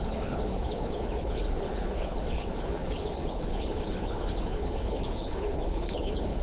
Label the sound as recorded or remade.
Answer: remade